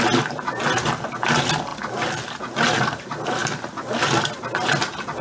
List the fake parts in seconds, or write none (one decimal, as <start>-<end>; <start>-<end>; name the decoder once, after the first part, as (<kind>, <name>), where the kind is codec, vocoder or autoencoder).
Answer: none